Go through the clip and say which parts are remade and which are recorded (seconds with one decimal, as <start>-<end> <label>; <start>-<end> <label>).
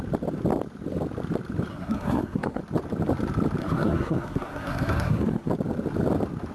0.0-1.7 recorded; 1.7-2.6 remade; 2.6-3.6 recorded; 3.6-5.5 remade; 5.5-6.5 recorded